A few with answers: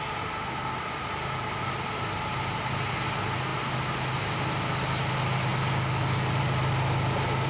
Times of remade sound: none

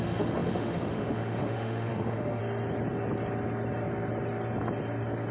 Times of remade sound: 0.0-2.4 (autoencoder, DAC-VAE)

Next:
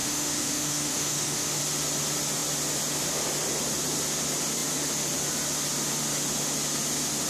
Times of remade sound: 0.0-1.6 (autoencoder, DAC-VAE)

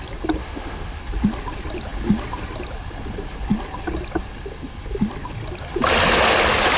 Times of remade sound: 0.4-1.0 (autoencoder, DAC-VAE)

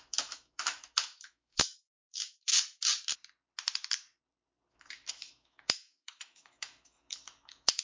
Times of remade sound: 0.0-2.5 (autoencoder, DAC-VAE); 4.7-7.8

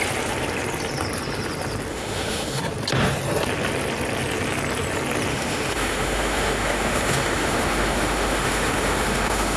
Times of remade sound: 1.9-2.6 (autoencoder, DAC-VAE); 5.3-9.6

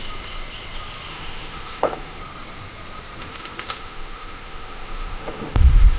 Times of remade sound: 1.1-2.2 (autoencoder, DAC-VAE); 3.2-6.0

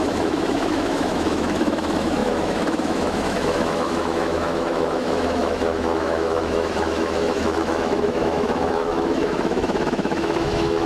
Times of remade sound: 0.0-10.9 (autoencoder, DAC-VAE)